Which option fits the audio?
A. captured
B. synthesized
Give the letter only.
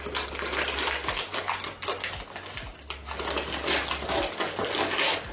A